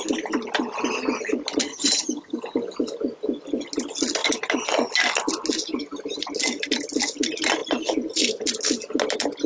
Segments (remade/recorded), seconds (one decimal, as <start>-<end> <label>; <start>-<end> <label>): 0.0-1.7 recorded; 1.7-2.4 remade; 2.4-9.5 recorded